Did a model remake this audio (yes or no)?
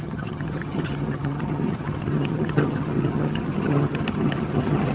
yes